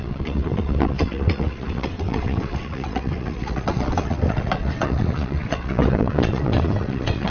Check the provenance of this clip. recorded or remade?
remade